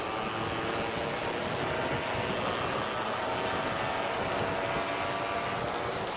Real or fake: real